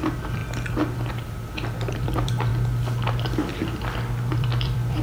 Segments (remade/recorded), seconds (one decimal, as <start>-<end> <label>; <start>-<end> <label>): 0.0-0.4 remade; 0.4-1.9 recorded; 1.9-2.5 remade; 2.5-3.1 recorded; 3.1-3.5 remade; 3.5-4.3 recorded; 4.3-5.0 remade